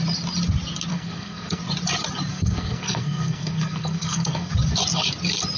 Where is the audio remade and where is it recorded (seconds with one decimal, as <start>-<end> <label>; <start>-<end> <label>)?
0.0-0.9 recorded; 0.9-1.6 remade; 1.6-2.3 recorded; 2.3-4.5 remade; 4.5-5.6 recorded